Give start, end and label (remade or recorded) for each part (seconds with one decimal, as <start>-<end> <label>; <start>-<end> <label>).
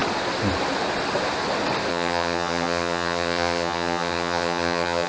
0.0-1.9 recorded; 1.9-5.1 remade